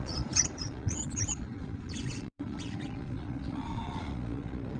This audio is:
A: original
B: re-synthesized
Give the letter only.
B